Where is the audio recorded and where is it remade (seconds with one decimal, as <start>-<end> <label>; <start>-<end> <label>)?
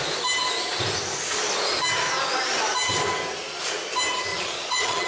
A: 0.0-4.3 recorded; 4.3-5.1 remade